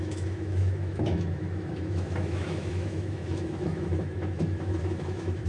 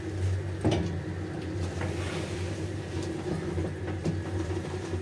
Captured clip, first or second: second